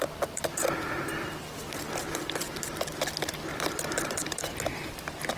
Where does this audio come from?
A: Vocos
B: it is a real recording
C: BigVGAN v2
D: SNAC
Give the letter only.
B